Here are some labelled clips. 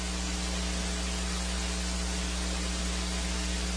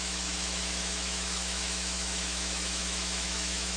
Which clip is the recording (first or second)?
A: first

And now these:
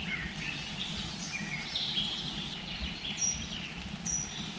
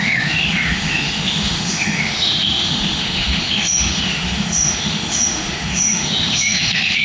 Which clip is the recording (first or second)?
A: first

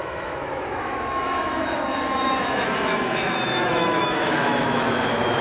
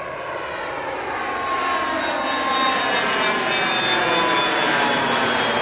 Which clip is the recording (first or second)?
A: second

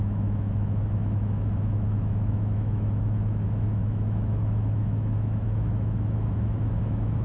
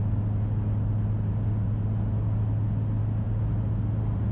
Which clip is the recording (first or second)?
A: second